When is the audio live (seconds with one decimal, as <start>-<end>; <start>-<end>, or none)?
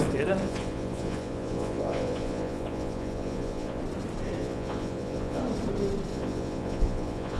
0.0-0.4; 3.8-4.4; 5.4-6.1